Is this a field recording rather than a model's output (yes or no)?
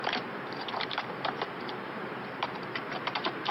no